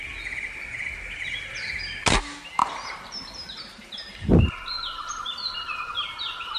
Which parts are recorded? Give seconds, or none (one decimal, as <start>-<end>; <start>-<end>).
0.0-2.6; 4.4-6.6